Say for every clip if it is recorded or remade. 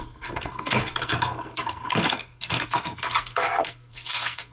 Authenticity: remade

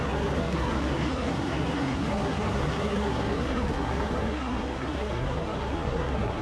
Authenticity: remade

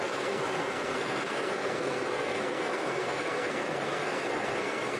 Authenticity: remade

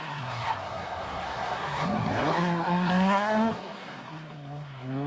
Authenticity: remade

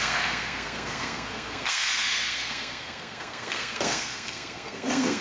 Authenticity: remade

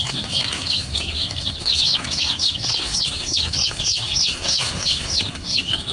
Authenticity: remade